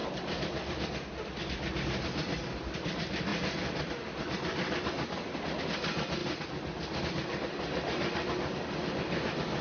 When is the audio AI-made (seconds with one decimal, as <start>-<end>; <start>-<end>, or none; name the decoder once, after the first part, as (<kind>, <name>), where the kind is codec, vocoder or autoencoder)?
none